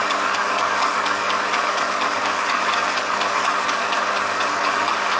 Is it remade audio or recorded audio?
remade